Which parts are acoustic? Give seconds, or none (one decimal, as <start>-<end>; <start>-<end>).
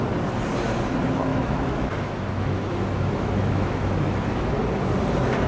0.0-1.3; 4.6-5.5